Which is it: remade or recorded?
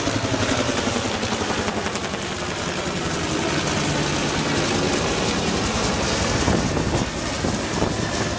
recorded